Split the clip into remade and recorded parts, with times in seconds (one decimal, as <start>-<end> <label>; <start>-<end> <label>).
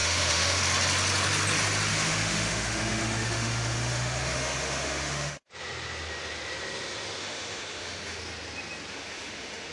0.0-0.6 remade; 0.6-1.9 recorded; 1.9-5.5 remade; 5.5-7.2 recorded; 7.2-8.2 remade; 8.2-8.9 recorded; 8.9-9.7 remade